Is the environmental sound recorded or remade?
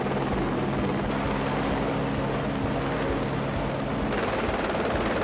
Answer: recorded